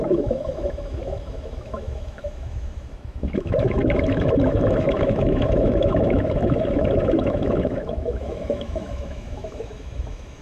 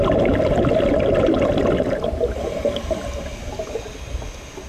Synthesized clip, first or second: first